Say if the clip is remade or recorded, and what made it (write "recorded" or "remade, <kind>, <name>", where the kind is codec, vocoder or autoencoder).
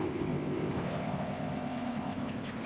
remade, codec, ZipCodec